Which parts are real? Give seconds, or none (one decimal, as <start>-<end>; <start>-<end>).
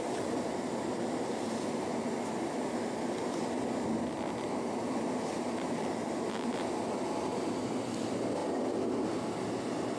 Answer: 0.0-10.0